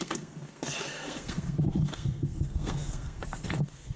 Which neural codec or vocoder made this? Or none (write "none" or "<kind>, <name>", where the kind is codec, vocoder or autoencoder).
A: codec, SNAC